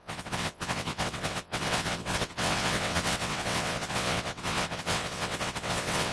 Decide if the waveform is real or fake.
fake